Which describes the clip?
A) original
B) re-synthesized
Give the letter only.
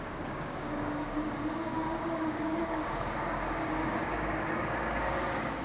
B